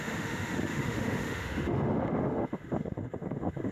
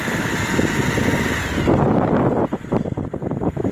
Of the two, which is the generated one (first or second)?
first